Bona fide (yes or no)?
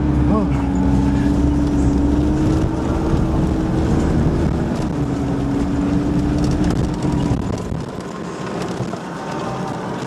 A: yes